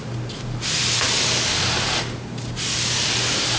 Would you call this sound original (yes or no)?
yes